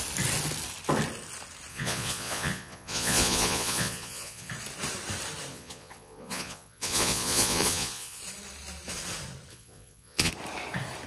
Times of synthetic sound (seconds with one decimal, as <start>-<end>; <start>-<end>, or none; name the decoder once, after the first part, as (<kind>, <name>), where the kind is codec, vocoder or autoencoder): 1.7-4.5 (vocoder, Vocos); 5.5-8.2; 9.5-10.3